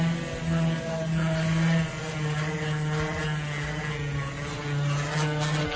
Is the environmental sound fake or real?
real